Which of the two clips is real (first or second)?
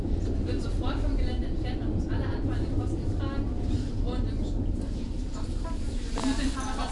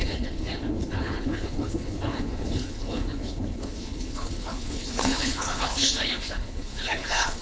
first